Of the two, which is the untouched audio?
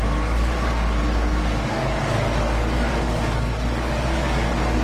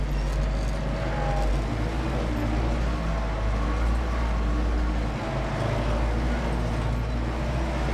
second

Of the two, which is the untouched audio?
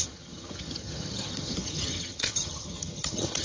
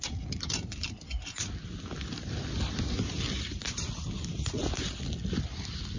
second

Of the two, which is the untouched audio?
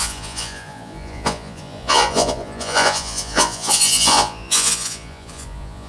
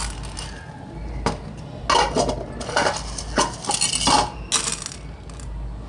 second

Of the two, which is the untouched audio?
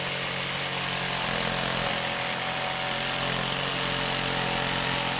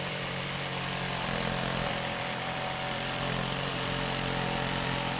first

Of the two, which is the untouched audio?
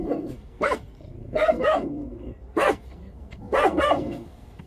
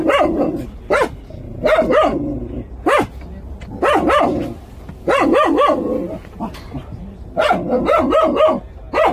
second